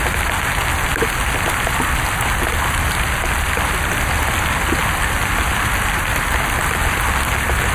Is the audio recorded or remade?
recorded